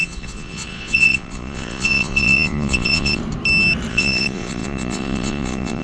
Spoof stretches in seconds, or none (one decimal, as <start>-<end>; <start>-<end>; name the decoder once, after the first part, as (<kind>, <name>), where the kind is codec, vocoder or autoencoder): 0.0-3.2 (vocoder, Vocos); 3.9-5.8